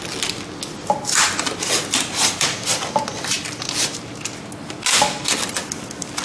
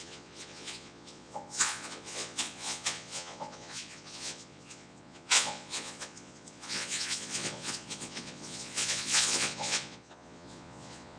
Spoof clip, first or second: second